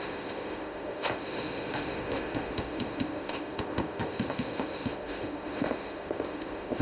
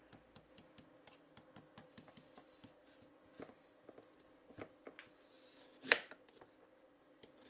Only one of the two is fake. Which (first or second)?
first